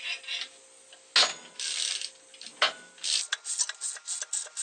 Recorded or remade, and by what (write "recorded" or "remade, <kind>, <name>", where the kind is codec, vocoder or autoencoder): recorded